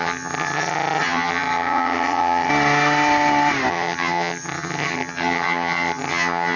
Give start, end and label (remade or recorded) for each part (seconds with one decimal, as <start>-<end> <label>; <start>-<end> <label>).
0.0-2.5 remade; 2.5-3.7 recorded; 3.7-6.6 remade